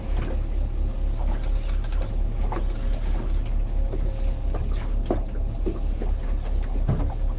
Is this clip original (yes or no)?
yes